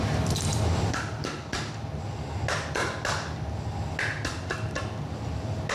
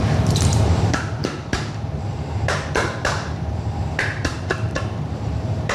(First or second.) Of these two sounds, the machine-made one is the second